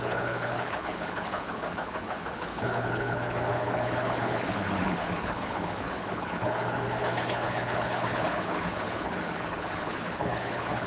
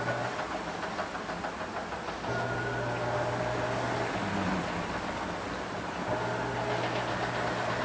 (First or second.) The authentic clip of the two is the second